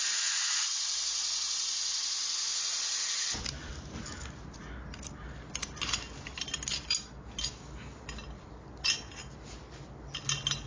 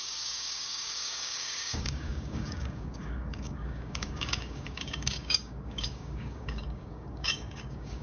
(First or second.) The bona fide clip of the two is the first